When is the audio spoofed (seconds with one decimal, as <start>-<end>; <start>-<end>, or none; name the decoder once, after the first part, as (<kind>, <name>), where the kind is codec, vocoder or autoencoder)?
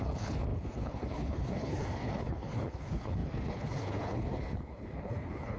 0.0-5.6 (codec, HILCodec)